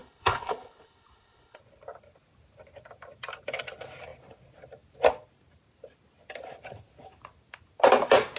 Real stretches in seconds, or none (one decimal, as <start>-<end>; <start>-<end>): 1.6-8.4

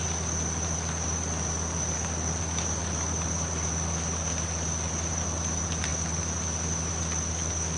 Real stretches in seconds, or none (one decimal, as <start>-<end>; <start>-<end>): 0.0-7.8

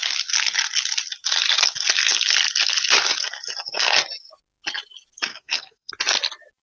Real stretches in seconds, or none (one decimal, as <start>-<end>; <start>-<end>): 0.0-5.3; 5.9-6.6